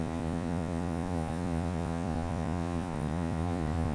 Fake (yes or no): yes